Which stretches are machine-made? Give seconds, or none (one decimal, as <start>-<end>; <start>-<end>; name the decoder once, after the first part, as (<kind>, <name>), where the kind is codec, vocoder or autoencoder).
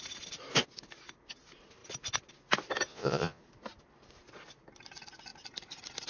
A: 2.9-3.4 (vocoder, Vocos)